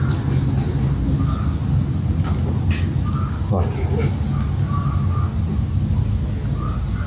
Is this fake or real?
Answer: real